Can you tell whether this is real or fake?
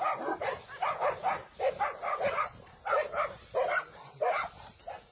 real